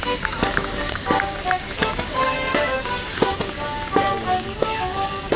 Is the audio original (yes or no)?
no